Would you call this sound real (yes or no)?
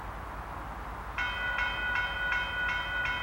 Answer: yes